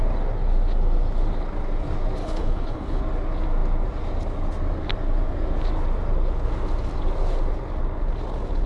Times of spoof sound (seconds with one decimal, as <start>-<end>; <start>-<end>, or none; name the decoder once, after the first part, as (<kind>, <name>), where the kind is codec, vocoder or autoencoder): 2.2-3.0 (codec, HILCodec)